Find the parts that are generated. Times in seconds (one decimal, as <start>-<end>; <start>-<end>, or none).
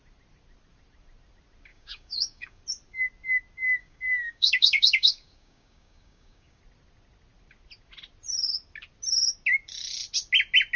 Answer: 1.7-2.6; 3.8-6.6